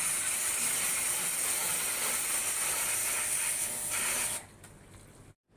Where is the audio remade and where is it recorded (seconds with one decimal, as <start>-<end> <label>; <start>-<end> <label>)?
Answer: 0.0-5.6 recorded